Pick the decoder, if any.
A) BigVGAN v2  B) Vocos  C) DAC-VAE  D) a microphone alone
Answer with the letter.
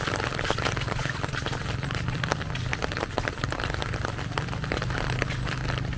D